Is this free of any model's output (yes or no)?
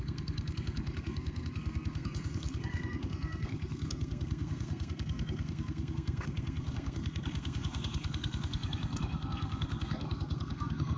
no